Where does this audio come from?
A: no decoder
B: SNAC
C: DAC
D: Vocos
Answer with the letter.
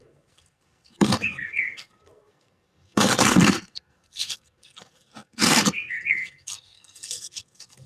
B